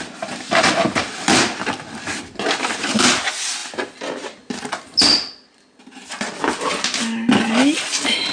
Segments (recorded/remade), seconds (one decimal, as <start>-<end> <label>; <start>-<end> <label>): 0.0-8.3 recorded